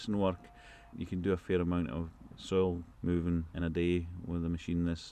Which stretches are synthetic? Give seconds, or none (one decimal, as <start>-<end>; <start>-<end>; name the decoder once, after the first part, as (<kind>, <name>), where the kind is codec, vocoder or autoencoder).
none

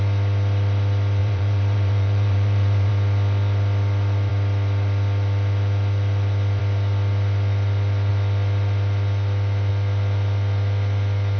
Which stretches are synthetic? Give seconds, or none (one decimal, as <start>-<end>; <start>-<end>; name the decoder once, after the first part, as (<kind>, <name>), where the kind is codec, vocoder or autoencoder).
1.2-2.9 (vocoder, BigVGAN v2)

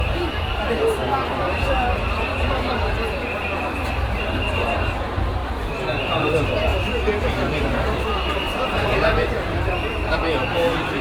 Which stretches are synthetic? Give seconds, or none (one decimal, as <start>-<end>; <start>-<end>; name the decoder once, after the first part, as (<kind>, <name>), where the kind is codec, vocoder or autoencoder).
0.0-1.0 (vocoder, BigVGAN v2); 5.0-5.4; 6.0-6.7; 7.6-11.0